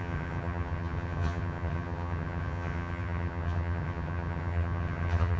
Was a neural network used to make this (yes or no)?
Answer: yes